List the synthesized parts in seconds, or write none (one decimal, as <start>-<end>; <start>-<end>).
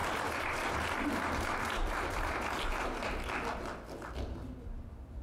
0.0-3.1